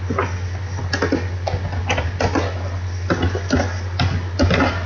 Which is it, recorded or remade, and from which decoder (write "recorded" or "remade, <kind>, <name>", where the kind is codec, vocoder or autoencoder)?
recorded